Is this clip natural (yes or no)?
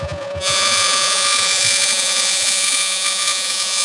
no